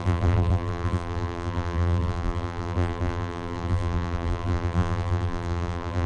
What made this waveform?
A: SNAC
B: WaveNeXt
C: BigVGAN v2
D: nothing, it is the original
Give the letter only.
C